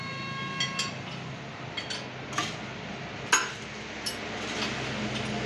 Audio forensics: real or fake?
real